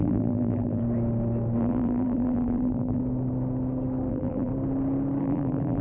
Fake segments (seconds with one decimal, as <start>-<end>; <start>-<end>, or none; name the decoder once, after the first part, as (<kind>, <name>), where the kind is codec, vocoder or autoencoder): 0.0-0.8 (vocoder, BigVGAN v2); 1.6-3.0; 4.1-4.5; 5.2-5.8